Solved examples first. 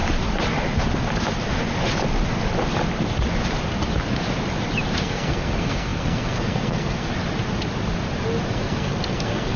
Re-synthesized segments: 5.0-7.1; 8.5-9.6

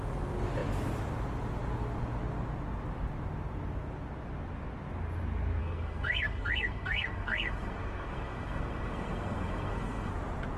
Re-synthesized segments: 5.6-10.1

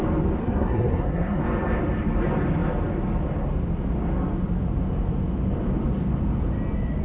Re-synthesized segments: 0.4-1.4

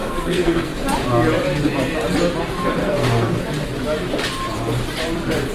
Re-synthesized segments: 0.0-0.8; 2.8-3.4